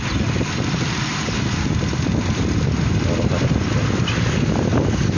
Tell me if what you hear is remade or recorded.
recorded